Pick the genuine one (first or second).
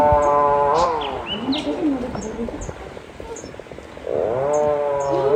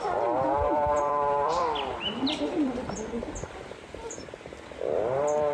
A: first